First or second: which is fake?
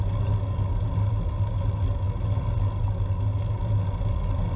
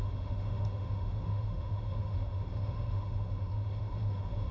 second